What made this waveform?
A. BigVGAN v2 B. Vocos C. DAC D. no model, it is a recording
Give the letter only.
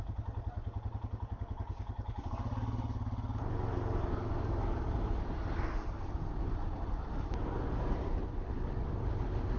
D